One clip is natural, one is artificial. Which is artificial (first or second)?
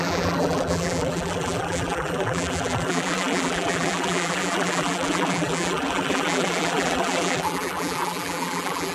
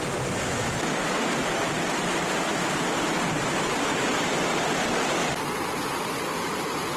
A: first